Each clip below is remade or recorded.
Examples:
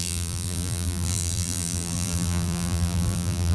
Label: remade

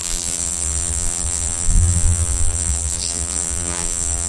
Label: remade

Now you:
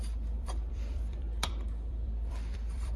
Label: remade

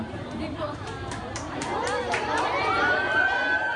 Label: remade